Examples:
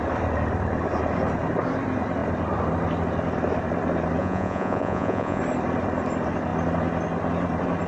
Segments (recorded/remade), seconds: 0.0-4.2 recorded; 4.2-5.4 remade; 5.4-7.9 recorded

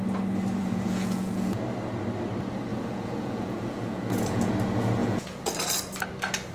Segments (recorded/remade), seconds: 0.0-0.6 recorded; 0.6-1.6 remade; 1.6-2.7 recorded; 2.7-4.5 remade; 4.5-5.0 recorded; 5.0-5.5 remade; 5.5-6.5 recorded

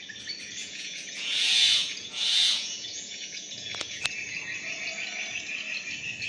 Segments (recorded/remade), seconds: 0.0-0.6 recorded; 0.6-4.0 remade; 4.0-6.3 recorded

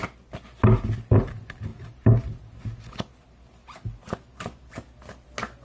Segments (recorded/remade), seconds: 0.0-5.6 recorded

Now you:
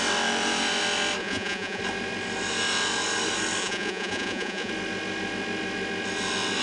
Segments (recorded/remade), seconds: 0.0-1.2 recorded; 1.2-1.8 remade; 1.8-3.6 recorded; 3.6-4.7 remade; 4.7-6.6 recorded

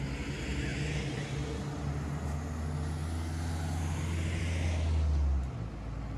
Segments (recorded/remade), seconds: 0.0-6.2 recorded